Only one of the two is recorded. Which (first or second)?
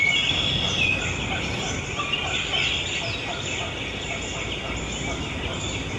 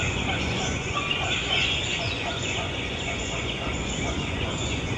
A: first